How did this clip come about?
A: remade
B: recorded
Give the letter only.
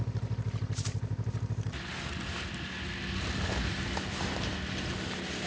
B